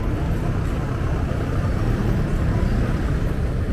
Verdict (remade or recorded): recorded